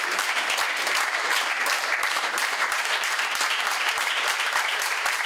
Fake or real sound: fake